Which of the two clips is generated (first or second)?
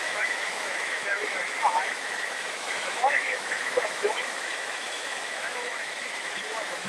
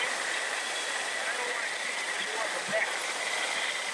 first